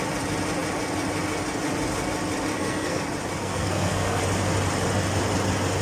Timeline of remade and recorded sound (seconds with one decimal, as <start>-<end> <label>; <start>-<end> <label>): 0.0-2.5 recorded; 2.5-3.0 remade; 3.0-3.4 recorded; 3.4-4.2 remade; 4.2-5.8 recorded